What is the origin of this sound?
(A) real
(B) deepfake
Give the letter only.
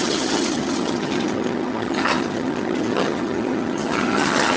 B